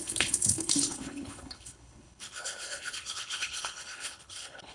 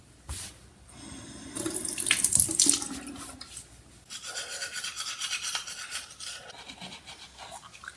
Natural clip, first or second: second